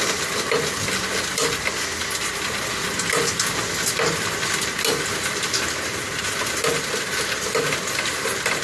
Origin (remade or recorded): recorded